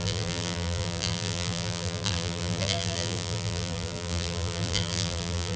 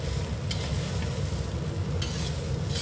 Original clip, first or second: second